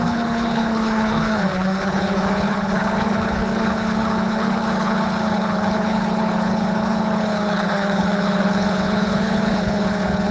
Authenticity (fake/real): fake